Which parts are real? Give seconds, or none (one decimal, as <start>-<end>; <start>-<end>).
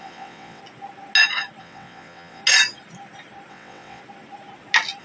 0.6-1.6; 2.4-3.5; 4.0-5.0